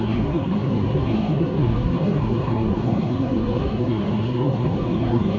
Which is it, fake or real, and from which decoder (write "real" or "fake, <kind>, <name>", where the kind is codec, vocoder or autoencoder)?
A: fake, codec, SNAC